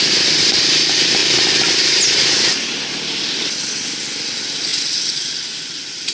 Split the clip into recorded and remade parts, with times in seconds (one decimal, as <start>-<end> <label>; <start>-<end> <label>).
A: 0.0-6.1 recorded